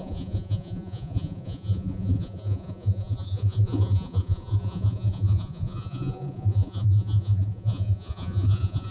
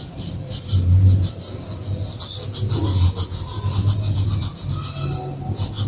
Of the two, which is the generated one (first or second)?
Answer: first